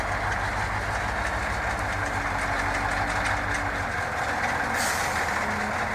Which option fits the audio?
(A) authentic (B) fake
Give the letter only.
A